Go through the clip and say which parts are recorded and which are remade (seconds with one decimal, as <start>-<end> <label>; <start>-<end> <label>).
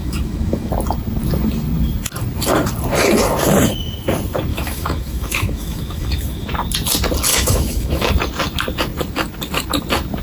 0.0-0.7 remade; 0.7-4.5 recorded; 4.5-6.5 remade; 6.5-7.3 recorded; 7.3-8.1 remade; 8.1-10.2 recorded